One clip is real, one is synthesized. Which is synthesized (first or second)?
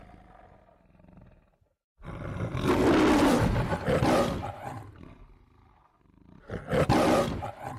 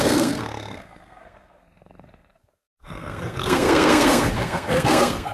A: second